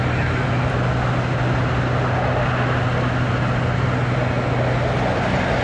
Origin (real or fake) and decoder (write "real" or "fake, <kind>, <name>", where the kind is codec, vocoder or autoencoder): real